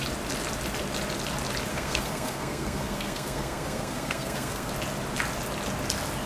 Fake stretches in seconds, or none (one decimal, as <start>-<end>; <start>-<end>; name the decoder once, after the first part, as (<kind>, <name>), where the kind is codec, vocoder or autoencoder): 1.7-4.7 (codec, SNAC)